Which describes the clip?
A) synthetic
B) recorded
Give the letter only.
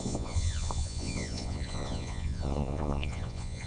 A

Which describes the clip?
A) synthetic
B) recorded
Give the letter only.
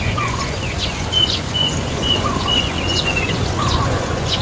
A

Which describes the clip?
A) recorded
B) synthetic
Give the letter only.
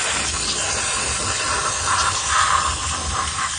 A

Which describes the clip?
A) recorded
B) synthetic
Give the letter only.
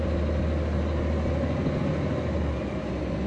A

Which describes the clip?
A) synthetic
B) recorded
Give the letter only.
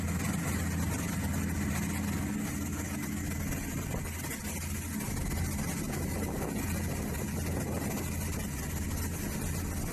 B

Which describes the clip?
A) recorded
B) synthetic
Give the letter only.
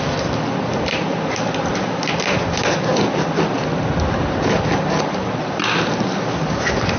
A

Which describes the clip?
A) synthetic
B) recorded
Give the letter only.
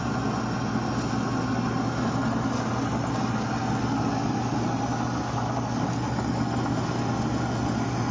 B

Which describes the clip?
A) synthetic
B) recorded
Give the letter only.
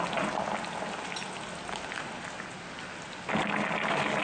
B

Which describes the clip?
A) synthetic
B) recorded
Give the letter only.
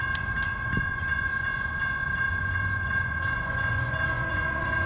A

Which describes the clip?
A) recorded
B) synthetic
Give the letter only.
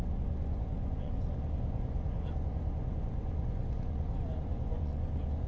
B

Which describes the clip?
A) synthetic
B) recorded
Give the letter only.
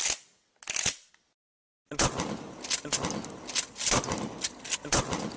B